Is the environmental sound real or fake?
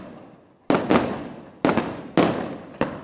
real